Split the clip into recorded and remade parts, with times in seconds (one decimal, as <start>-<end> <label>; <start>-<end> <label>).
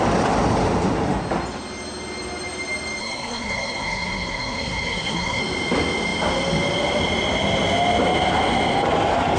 0.0-3.0 recorded; 3.0-5.4 remade; 5.4-9.4 recorded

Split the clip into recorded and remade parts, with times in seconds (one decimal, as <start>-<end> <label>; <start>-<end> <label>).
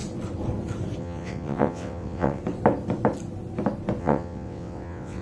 0.0-1.0 recorded; 1.0-2.4 remade; 2.4-4.0 recorded; 4.0-5.2 remade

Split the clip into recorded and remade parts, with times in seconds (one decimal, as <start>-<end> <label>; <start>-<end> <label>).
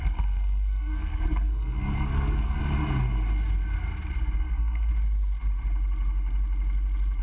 0.0-2.6 remade; 2.6-4.4 recorded; 4.4-4.9 remade; 4.9-7.2 recorded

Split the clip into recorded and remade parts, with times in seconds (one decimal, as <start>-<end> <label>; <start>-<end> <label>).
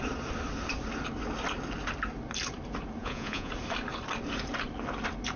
0.0-3.0 recorded; 3.0-3.5 remade; 3.5-5.4 recorded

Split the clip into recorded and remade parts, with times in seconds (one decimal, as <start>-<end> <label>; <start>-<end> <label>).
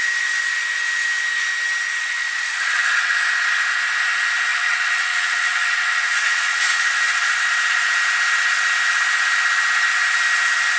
0.0-2.0 recorded; 2.0-3.1 remade; 3.1-4.5 recorded; 4.5-7.4 remade; 7.4-10.8 recorded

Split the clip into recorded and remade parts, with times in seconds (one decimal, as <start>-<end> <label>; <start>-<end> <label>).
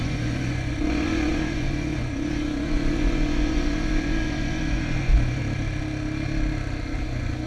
0.0-5.4 remade; 5.4-7.0 recorded; 7.0-7.5 remade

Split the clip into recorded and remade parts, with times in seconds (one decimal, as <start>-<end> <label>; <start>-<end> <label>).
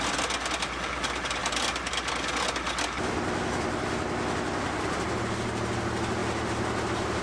0.0-7.2 recorded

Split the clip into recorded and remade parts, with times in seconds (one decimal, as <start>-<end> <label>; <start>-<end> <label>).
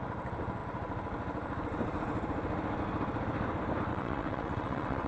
0.0-3.9 recorded; 3.9-5.1 remade